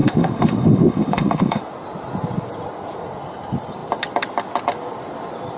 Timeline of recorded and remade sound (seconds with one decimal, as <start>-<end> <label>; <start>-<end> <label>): 0.0-1.6 remade; 1.6-5.6 recorded